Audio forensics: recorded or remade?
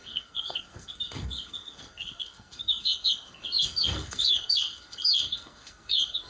remade